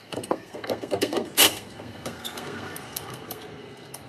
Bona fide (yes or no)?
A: no